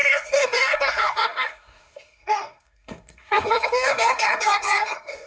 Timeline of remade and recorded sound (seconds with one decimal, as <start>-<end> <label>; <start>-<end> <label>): 0.0-5.3 remade